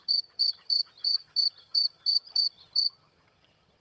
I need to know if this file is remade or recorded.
remade